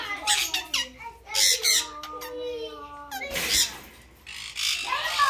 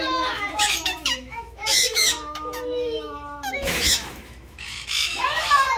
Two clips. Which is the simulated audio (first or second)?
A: second